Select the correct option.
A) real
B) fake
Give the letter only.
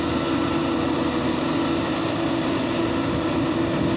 A